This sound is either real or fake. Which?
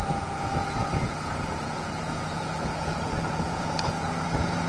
fake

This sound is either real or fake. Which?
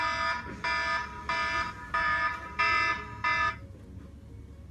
real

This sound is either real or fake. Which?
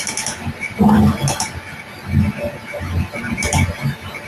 real